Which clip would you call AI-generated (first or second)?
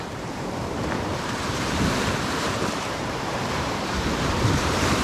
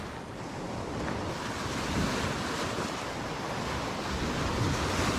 first